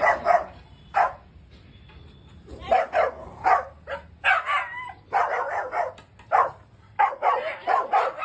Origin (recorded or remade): recorded